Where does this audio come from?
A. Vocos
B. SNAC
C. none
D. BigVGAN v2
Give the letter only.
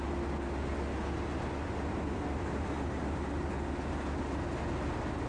C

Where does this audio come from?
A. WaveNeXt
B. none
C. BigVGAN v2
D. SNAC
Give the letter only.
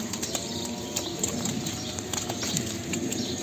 C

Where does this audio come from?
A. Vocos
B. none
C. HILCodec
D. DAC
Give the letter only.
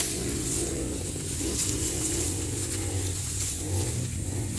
A